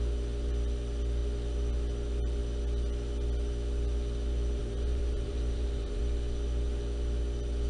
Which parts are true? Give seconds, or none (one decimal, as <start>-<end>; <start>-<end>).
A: 0.0-4.6; 6.0-7.7